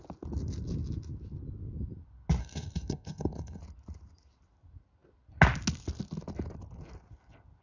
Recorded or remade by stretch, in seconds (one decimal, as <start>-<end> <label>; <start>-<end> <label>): 0.0-2.4 recorded; 2.4-3.6 remade; 3.6-7.6 recorded